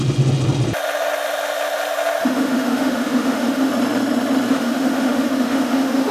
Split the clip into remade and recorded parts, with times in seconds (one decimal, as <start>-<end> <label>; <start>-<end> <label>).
0.0-2.2 recorded; 2.2-3.7 remade; 3.7-4.5 recorded; 4.5-6.1 remade